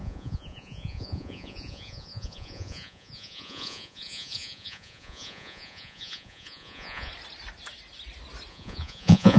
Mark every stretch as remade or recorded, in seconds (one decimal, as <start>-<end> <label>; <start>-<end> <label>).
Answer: 0.0-7.1 remade; 7.1-8.5 recorded; 8.5-9.4 remade